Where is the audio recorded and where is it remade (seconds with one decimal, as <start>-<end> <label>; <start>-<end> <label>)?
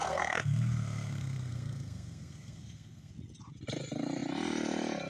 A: 0.0-3.1 remade; 3.1-5.1 recorded